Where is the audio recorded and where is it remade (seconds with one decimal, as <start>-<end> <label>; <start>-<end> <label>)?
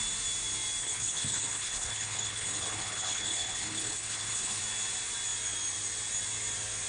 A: 0.0-0.8 recorded; 0.8-4.6 remade; 4.6-6.9 recorded